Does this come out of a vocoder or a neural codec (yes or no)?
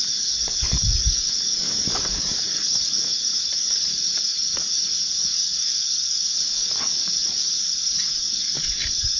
yes